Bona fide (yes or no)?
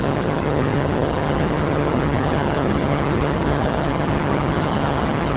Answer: no